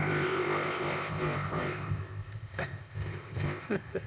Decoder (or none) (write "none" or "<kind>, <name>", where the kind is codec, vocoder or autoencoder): codec, ZipCodec